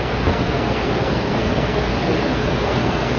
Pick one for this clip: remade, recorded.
remade